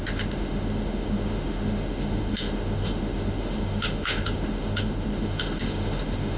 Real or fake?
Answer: fake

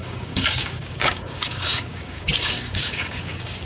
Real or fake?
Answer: fake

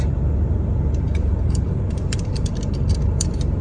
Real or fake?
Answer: fake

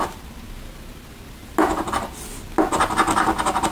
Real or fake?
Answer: real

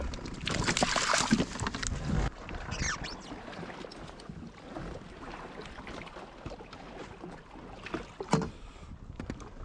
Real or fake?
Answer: real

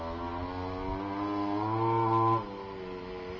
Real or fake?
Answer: real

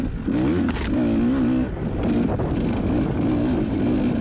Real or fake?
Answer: real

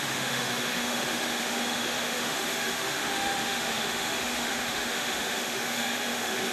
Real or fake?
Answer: fake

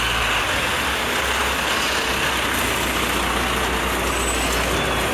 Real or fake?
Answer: real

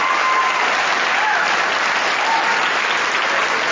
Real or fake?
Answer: real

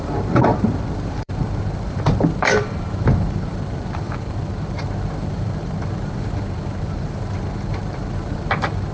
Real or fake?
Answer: fake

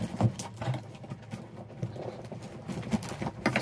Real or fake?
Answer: real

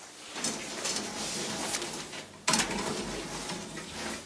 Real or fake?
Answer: real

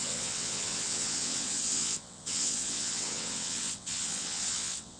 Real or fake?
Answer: fake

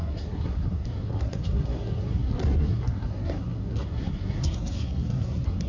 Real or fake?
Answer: fake